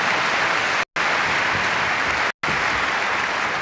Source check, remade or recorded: recorded